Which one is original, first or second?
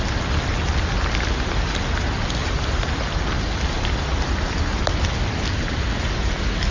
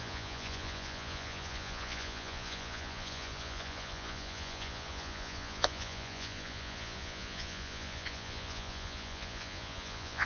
first